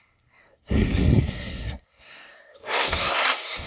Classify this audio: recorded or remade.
remade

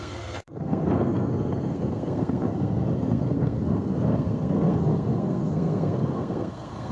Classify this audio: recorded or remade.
remade